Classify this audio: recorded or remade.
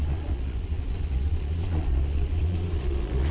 remade